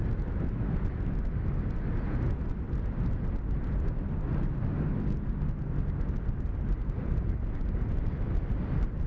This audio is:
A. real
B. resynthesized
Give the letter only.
A